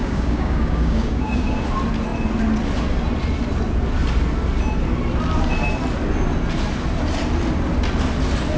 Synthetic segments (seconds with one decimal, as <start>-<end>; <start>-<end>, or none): 0.0-1.6